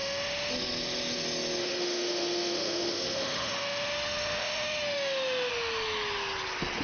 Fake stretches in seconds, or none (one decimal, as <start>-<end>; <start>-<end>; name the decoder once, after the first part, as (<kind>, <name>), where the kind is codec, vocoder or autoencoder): 0.0-0.5 (autoencoder, DAC-VAE); 1.6-5.5